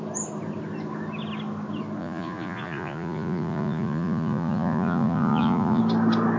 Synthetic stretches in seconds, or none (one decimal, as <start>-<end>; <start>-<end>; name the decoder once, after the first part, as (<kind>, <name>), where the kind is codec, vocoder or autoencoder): 2.0-5.8 (vocoder, Vocos)